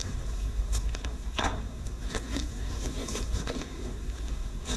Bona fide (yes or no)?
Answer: no